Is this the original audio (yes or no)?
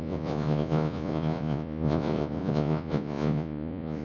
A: no